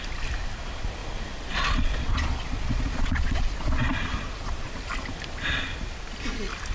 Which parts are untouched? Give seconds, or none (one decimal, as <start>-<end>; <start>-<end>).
0.0-1.0; 4.7-6.7